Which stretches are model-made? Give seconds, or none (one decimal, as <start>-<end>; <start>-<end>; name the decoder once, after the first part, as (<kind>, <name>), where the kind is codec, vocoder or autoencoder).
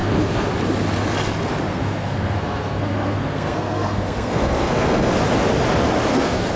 0.0-0.5 (codec, SNAC); 1.7-5.1; 6.1-6.6